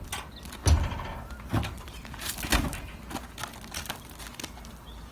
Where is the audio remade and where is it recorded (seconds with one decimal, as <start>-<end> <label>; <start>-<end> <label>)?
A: 0.0-5.1 recorded